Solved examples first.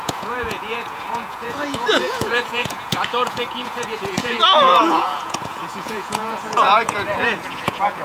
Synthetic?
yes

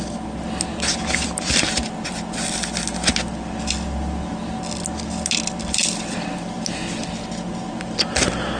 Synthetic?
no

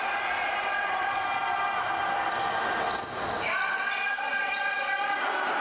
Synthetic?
no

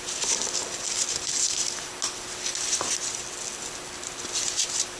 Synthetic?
no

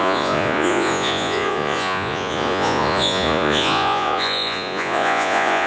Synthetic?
yes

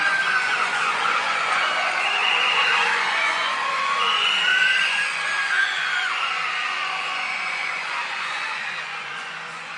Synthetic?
yes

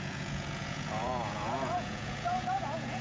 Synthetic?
yes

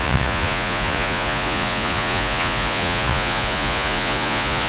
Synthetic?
yes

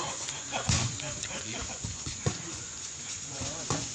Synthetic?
yes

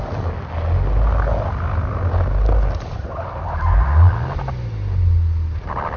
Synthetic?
no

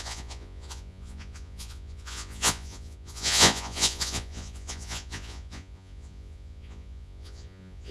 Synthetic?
yes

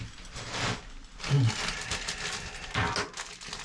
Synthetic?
no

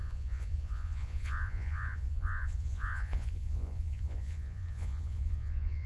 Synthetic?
yes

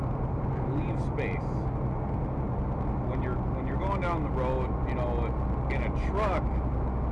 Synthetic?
no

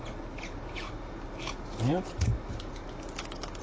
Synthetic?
no